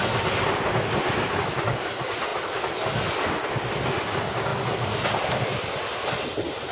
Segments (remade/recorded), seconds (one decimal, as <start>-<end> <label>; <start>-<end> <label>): 0.0-6.7 recorded